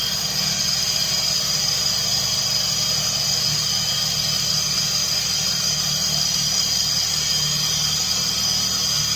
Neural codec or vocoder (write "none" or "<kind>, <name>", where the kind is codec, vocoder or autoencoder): none